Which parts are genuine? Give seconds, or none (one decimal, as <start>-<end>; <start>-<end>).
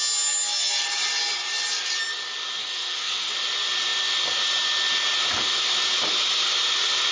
0.0-2.6; 3.3-7.1